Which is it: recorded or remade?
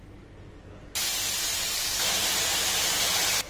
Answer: recorded